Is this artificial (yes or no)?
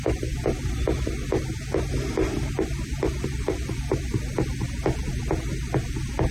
no